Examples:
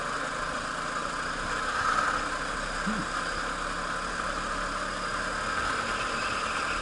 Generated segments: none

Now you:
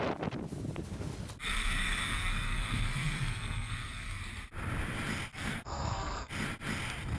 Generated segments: 1.4-4.2; 5.3-6.3

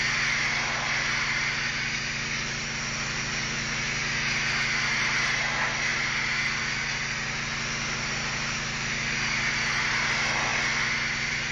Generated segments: none

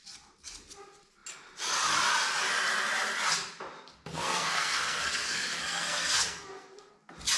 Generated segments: 4.1-6.9